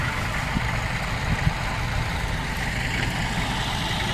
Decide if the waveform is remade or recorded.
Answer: recorded